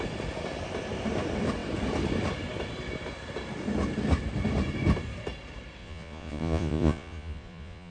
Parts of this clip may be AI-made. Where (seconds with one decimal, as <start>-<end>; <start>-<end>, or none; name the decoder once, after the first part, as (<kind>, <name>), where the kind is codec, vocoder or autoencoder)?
5.8-7.9 (vocoder, Vocos)